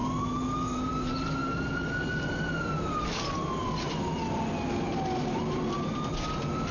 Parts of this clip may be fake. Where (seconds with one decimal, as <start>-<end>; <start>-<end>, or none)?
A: none

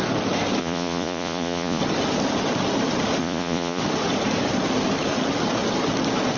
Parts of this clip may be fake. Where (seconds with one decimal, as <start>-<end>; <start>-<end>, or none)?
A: 0.6-1.8; 3.2-3.8

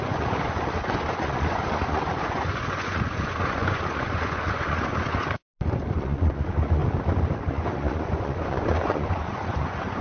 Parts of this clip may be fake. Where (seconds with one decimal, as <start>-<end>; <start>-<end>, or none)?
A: 0.0-5.4; 6.0-6.8; 7.5-10.0

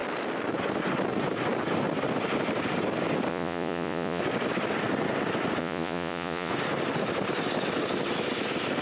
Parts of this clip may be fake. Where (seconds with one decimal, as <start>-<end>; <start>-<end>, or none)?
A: 3.3-4.2; 5.6-6.5